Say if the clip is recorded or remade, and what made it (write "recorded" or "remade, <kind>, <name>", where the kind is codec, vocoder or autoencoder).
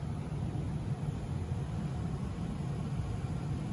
recorded